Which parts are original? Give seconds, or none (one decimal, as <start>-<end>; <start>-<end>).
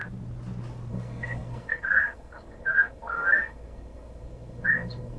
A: 0.0-0.9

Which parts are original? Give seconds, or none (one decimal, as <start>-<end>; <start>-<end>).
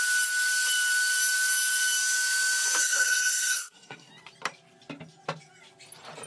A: 0.0-2.8; 4.1-6.3